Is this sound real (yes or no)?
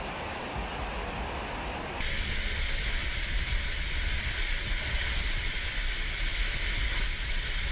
yes